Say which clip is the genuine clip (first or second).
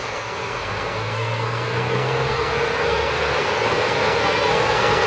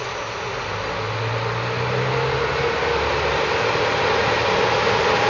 second